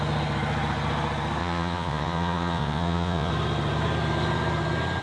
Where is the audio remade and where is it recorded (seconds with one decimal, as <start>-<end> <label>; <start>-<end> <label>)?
0.0-1.4 recorded; 1.4-3.3 remade; 3.3-5.0 recorded